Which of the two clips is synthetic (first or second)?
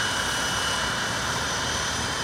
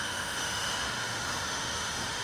second